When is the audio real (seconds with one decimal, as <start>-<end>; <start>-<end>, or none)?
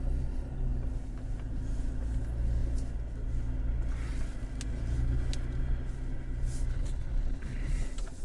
0.0-6.7; 7.7-8.2